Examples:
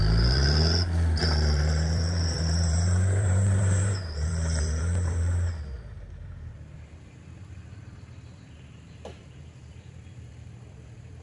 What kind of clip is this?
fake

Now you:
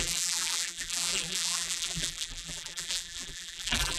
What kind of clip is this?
fake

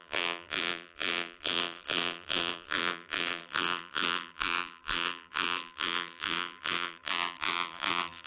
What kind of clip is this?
fake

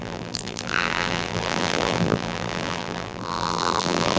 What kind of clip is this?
fake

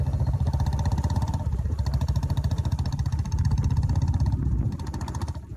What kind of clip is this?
fake